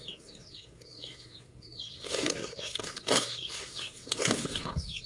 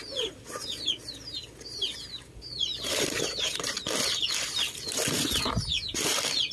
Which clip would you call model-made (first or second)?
first